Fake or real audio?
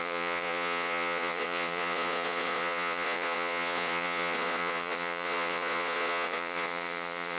fake